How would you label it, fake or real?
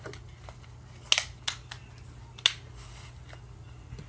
real